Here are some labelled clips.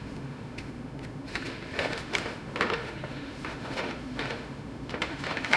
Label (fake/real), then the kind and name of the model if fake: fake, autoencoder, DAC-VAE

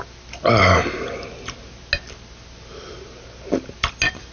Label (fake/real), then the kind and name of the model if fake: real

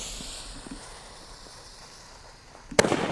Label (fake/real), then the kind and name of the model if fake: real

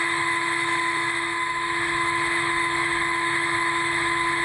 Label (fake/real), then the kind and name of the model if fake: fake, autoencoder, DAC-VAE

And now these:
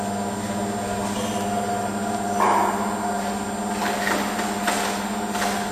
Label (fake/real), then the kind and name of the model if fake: real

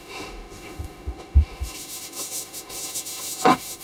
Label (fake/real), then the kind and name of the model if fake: fake, autoencoder, DAC-VAE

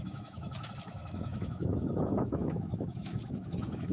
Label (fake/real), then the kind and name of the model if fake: fake, autoencoder, DAC-VAE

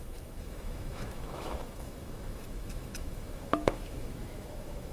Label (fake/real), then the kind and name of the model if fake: fake, autoencoder, DAC-VAE